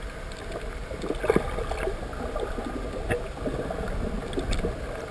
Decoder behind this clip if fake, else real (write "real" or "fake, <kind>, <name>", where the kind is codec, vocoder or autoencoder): real